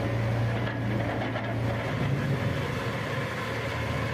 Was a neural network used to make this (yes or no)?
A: no